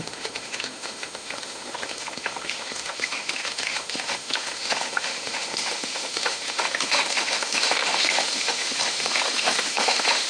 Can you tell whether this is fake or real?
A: fake